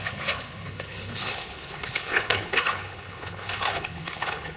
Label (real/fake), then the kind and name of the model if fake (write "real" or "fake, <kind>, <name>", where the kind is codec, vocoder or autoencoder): fake, codec, HILCodec